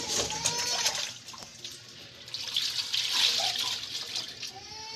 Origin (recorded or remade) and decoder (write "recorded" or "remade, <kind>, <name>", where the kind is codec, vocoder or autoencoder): recorded